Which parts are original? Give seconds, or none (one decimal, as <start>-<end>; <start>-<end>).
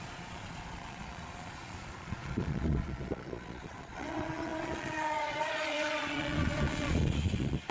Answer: none